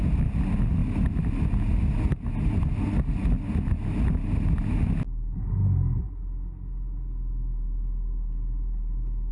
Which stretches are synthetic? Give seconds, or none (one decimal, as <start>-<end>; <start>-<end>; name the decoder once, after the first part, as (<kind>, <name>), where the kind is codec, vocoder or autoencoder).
none